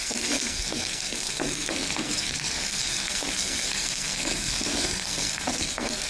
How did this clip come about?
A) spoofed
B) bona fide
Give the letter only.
A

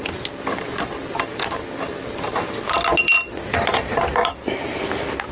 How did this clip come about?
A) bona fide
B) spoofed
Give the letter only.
A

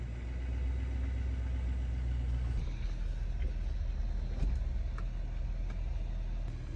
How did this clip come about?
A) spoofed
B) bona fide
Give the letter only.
B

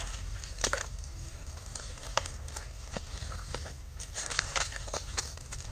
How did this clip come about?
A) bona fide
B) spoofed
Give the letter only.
B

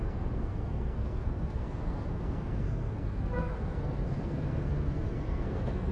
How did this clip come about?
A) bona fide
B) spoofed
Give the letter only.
B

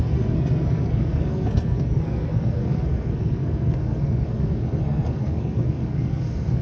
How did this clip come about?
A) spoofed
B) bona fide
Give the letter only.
A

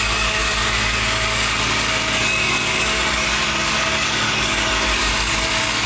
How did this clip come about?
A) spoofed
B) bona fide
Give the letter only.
A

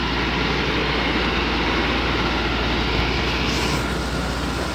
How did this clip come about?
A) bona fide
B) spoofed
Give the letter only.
A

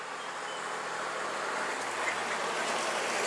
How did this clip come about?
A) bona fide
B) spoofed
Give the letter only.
A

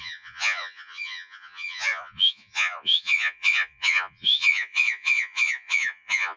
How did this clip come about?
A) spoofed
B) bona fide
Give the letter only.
A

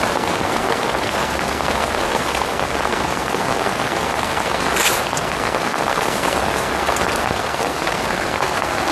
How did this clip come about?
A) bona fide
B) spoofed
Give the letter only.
B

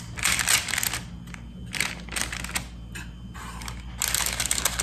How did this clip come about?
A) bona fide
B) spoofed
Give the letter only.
A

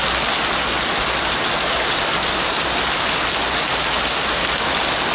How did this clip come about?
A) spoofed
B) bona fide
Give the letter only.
B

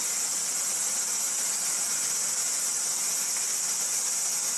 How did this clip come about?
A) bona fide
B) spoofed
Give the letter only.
A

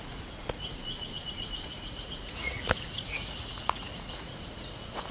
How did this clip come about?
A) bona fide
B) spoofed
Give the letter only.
B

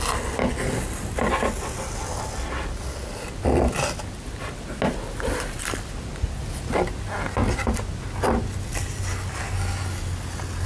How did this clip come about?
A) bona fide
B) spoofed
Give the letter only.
A